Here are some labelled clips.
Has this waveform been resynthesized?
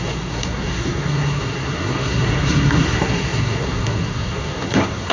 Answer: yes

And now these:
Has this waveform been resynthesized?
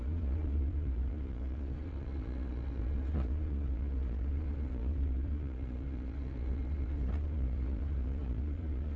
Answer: yes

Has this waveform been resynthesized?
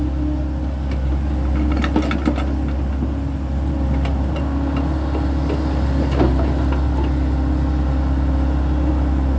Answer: no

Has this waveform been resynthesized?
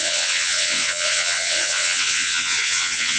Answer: yes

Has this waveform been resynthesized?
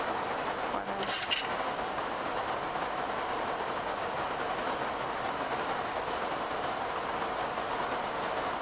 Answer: no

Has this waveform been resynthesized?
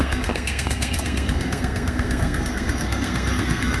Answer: yes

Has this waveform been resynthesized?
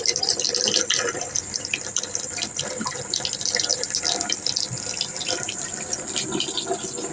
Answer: no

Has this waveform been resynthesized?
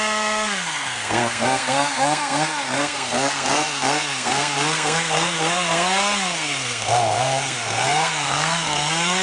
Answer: yes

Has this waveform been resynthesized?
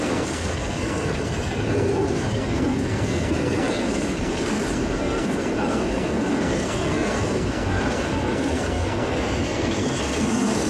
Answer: yes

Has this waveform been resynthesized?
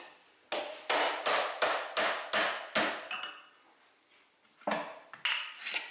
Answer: no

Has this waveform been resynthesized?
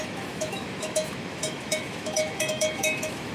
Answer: yes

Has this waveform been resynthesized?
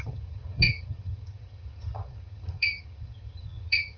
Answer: yes